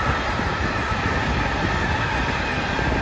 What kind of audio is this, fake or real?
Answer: real